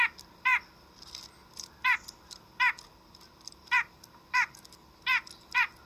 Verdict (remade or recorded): remade